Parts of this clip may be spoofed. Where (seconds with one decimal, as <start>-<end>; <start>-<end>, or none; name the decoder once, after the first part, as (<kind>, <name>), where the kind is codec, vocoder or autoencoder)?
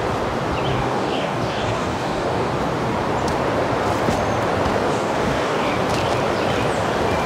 0.7-2.5 (codec, DAC); 4.9-5.7